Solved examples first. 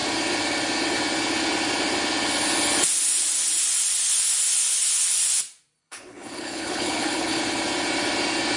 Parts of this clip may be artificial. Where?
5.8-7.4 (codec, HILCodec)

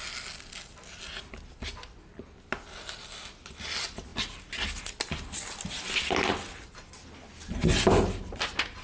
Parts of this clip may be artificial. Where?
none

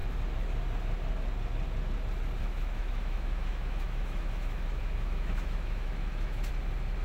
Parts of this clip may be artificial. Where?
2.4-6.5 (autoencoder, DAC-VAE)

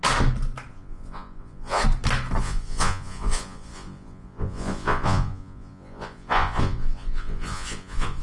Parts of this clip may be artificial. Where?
0.7-1.8 (vocoder, Vocos); 2.4-8.2